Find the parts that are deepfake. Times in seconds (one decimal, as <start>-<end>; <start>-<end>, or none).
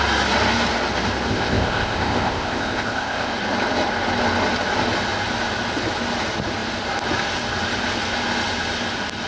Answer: 1.3-3.3